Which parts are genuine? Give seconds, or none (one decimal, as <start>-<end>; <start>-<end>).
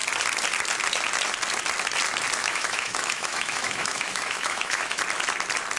0.0-2.4; 5.0-5.8